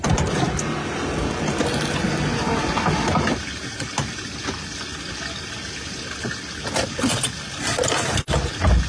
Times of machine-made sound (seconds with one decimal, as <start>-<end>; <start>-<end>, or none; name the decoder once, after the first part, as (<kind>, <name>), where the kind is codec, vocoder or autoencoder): none